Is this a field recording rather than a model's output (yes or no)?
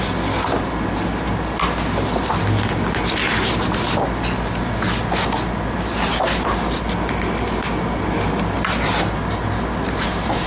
yes